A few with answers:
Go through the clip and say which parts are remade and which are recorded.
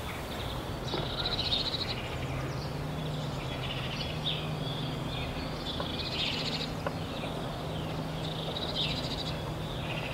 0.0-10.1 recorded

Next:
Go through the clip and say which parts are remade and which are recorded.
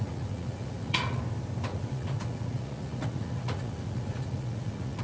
0.0-1.2 remade; 1.2-1.7 recorded; 1.7-5.0 remade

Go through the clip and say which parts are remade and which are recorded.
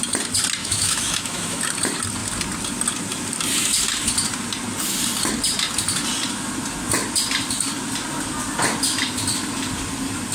0.0-0.6 recorded; 0.6-1.6 remade; 1.6-10.3 recorded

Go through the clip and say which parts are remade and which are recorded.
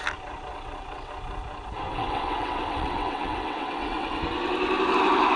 0.0-0.5 recorded; 0.5-1.1 remade; 1.1-1.9 recorded; 1.9-4.2 remade; 4.2-5.4 recorded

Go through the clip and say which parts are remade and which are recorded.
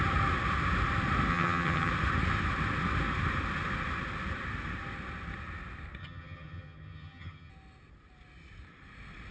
0.0-1.3 recorded; 1.3-1.9 remade; 1.9-6.0 recorded; 6.0-7.5 remade; 7.5-9.3 recorded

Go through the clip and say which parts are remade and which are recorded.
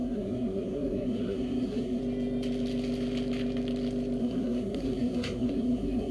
0.0-2.0 remade; 2.0-4.2 recorded; 4.2-6.1 remade